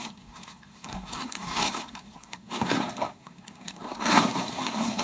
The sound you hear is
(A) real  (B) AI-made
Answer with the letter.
B